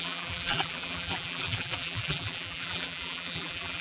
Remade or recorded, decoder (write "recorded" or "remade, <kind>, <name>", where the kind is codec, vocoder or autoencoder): remade, vocoder, BigVGAN v2